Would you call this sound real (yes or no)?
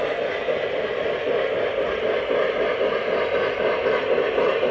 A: yes